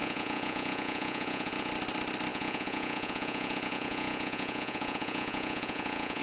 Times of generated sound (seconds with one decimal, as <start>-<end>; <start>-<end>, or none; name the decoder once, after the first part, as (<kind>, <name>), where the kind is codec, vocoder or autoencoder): 0.0-1.7 (vocoder, Vocos); 2.3-6.2